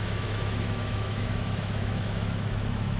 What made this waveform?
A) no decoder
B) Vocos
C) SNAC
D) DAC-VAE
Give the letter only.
D